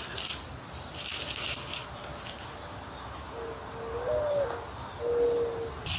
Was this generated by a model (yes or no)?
no